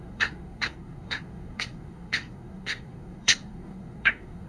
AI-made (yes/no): yes